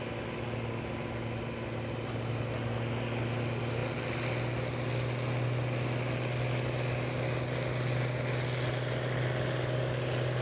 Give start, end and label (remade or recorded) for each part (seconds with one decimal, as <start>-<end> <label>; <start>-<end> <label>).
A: 0.0-10.4 recorded